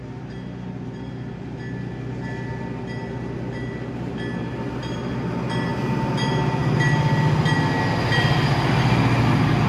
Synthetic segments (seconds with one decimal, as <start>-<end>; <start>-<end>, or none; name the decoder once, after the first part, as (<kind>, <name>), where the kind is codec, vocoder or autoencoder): none